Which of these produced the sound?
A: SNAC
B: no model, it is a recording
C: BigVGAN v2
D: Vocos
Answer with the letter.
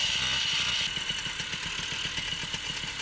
B